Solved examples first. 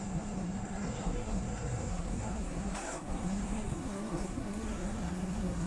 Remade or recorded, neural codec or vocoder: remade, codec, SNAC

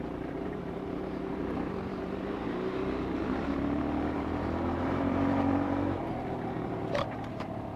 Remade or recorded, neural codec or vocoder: remade, vocoder, BigVGAN v2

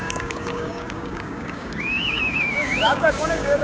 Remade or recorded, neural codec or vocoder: remade, codec, DAC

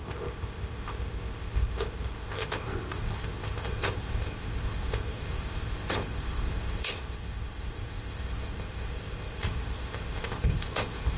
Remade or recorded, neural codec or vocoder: remade, codec, ZipCodec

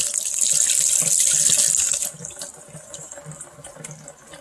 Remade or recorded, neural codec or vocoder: recorded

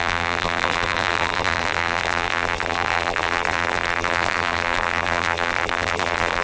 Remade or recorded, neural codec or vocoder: remade, vocoder, BigVGAN v2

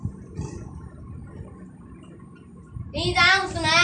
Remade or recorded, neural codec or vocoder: recorded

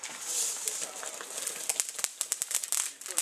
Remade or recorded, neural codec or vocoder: recorded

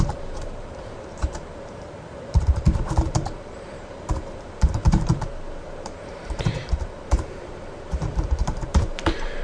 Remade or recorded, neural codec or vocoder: remade, vocoder, BigVGAN v2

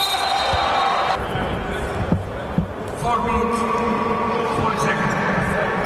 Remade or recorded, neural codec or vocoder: recorded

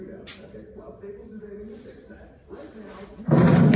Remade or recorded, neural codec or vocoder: recorded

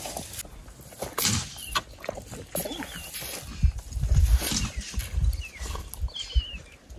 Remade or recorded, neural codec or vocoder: recorded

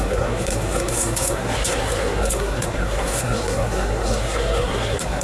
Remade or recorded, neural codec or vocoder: remade, codec, SNAC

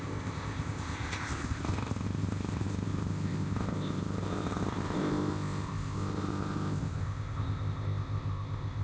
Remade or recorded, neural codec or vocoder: remade, codec, ZipCodec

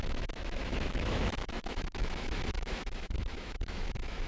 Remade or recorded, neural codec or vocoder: remade, autoencoder, DAC-VAE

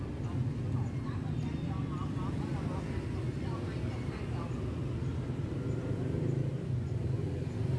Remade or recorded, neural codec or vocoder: recorded